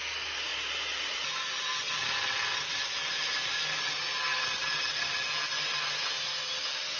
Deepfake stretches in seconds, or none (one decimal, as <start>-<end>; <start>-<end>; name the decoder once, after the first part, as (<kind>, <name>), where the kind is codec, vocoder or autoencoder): none